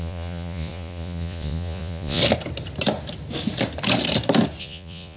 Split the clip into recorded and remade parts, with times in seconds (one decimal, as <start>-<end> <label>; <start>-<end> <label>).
0.0-2.2 remade; 2.2-4.6 recorded; 4.6-5.2 remade